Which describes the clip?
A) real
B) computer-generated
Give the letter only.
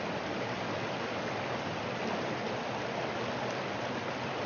A